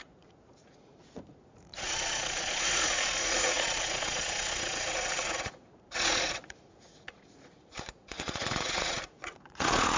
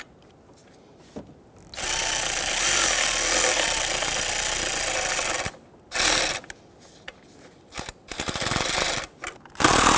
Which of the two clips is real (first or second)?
second